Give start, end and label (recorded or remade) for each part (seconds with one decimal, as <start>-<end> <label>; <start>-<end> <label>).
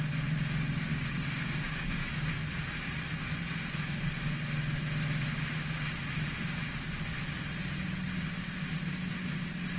0.0-0.9 recorded; 0.9-2.4 remade; 2.4-9.8 recorded